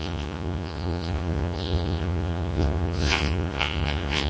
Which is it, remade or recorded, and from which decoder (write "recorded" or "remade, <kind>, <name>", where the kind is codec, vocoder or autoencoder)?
remade, vocoder, Vocos